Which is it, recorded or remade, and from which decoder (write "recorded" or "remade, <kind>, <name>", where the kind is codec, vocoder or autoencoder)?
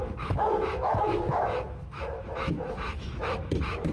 remade, autoencoder, DAC-VAE